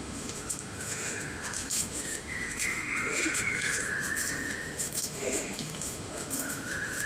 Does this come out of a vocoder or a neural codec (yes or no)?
yes